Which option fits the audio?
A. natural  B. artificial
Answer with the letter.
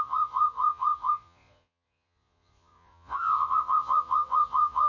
B